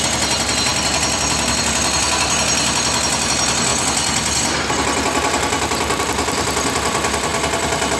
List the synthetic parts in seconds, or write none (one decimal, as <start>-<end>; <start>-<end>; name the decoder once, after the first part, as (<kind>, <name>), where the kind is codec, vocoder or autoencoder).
none